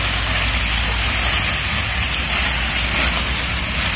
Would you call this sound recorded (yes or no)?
yes